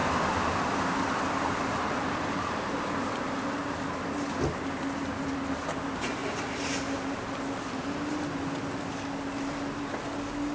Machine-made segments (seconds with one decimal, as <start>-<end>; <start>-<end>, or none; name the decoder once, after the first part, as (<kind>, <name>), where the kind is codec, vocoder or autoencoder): none